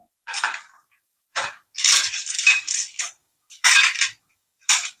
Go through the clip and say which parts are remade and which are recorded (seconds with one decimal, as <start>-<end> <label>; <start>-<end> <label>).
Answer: 0.0-5.0 remade